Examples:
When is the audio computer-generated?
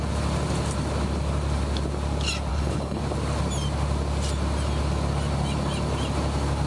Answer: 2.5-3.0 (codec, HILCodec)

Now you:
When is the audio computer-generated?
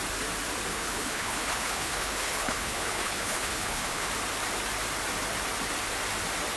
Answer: 0.7-4.1 (codec, HILCodec)